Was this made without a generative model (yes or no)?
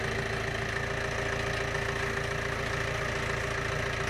yes